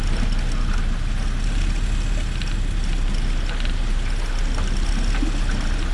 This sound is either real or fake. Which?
real